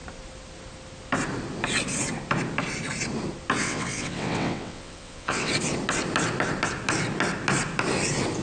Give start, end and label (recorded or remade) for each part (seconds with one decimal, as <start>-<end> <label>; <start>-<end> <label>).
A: 0.0-3.6 recorded; 3.6-5.5 remade; 5.5-8.4 recorded

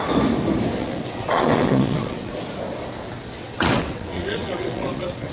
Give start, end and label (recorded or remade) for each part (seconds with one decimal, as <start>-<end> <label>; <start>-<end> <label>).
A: 0.0-0.8 recorded; 0.8-2.3 remade; 2.3-3.4 recorded; 3.4-5.3 remade

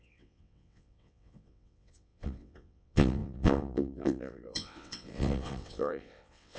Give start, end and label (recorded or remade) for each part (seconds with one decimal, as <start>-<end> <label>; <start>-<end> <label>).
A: 0.0-6.6 remade

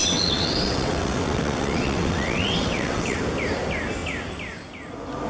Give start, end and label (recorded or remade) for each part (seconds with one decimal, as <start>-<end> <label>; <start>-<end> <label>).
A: 0.0-3.2 remade; 3.2-5.3 recorded

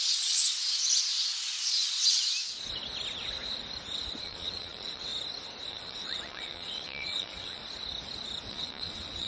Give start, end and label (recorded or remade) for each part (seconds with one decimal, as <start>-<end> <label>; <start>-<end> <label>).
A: 0.0-0.8 remade; 0.8-1.4 recorded; 1.4-2.3 remade; 2.3-4.2 recorded; 4.2-5.1 remade; 5.1-5.7 recorded; 5.7-7.6 remade; 7.6-8.5 recorded; 8.5-9.3 remade